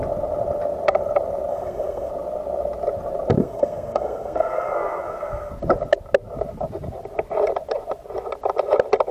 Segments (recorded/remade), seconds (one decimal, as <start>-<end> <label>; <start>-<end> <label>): 0.0-1.5 recorded; 1.5-2.1 remade; 2.1-3.4 recorded; 3.4-5.5 remade; 5.5-9.1 recorded